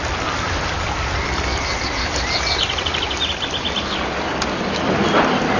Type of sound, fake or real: real